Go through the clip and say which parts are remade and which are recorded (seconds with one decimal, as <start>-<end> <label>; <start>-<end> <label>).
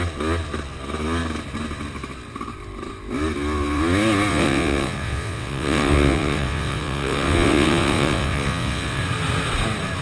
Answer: 0.0-4.3 recorded; 4.3-9.0 remade; 9.0-10.0 recorded